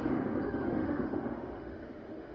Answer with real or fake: fake